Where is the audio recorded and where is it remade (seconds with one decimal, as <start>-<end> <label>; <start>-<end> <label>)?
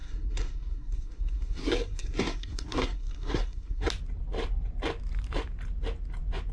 0.0-3.9 remade; 3.9-6.5 recorded